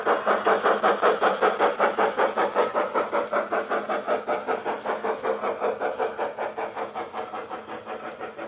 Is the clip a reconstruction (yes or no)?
no